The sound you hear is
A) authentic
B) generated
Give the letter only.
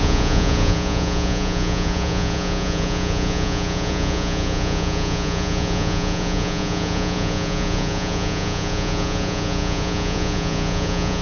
B